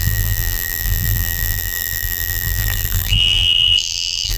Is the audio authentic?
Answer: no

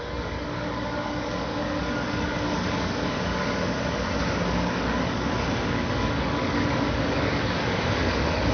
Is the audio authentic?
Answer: no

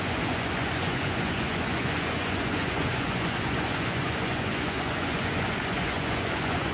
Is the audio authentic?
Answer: no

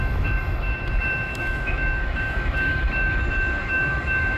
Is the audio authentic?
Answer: no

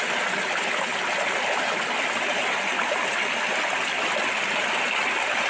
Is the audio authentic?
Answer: yes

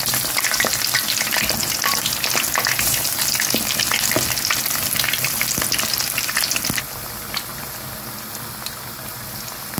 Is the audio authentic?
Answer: yes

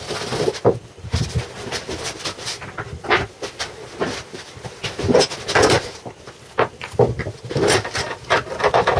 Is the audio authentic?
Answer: no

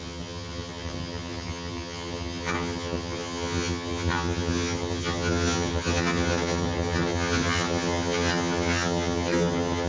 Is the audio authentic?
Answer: no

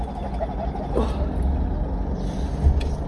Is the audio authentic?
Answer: yes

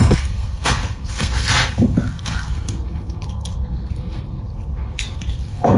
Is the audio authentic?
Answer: no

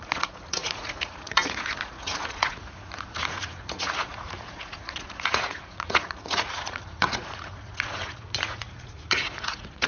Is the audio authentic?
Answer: no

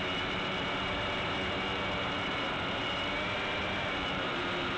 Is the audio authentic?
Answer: no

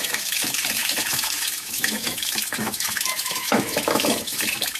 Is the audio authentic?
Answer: no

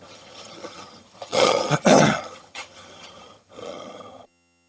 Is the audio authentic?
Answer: no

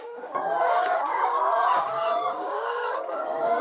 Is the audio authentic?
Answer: no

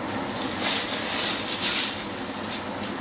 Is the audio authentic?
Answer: yes